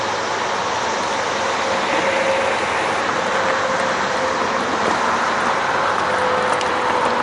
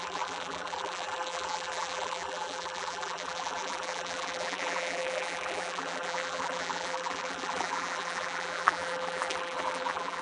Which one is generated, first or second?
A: second